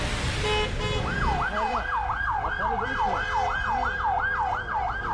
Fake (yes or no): no